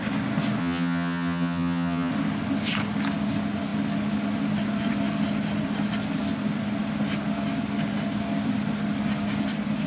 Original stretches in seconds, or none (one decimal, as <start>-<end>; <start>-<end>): 0.0-0.6; 2.1-9.9